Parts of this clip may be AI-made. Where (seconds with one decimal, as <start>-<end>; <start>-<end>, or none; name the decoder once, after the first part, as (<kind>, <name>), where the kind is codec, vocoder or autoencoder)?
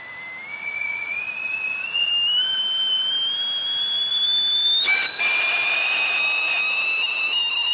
0.5-2.1 (vocoder, Vocos)